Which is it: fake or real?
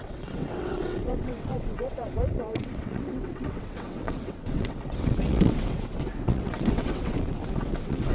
fake